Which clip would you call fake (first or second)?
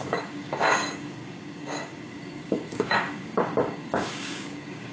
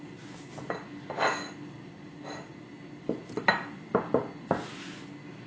first